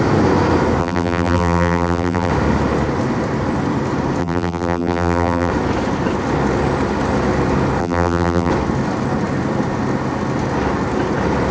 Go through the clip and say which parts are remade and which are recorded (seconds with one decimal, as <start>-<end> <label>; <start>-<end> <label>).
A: 0.0-0.8 recorded; 0.8-2.3 remade; 2.3-4.2 recorded; 4.2-5.5 remade; 5.5-7.8 recorded; 7.8-8.5 remade; 8.5-11.5 recorded